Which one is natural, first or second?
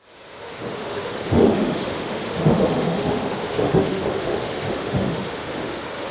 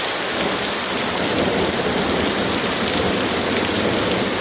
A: second